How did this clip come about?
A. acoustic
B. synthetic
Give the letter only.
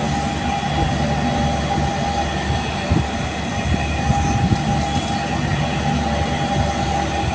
A